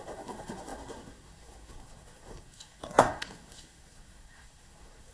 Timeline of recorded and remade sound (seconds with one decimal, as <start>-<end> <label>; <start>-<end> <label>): 0.0-5.1 remade